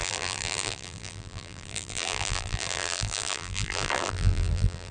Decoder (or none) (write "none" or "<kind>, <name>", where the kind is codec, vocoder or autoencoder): vocoder, BigVGAN v2